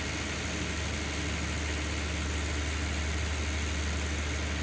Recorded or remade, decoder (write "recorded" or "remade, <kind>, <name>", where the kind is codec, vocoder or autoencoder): recorded